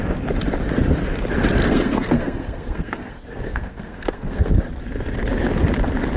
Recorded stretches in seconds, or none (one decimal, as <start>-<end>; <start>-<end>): 0.0-1.6; 4.6-6.2